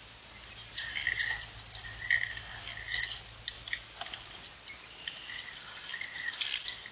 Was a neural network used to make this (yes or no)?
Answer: yes